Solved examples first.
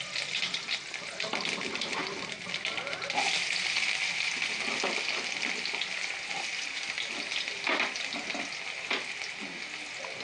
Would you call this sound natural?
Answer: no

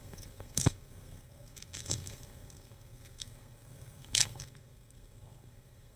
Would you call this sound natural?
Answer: no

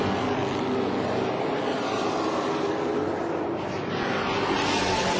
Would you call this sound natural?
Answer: yes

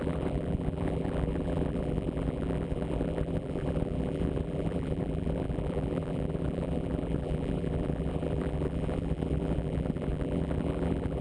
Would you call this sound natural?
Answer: no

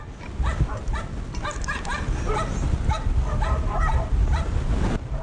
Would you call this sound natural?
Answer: yes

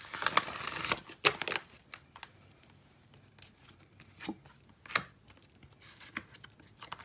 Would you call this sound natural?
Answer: yes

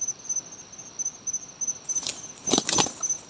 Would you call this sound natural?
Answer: yes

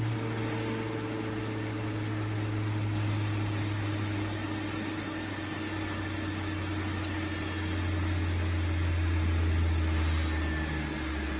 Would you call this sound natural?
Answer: yes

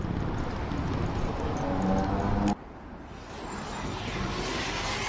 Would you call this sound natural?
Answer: yes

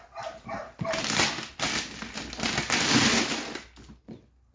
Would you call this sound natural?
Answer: yes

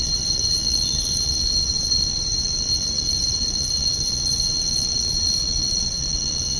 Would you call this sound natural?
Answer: no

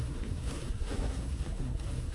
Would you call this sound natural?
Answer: no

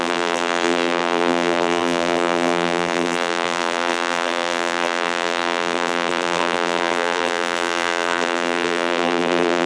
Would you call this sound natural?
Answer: no